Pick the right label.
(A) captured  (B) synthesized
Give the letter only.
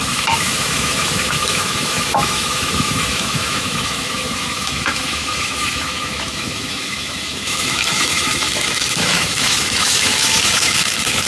B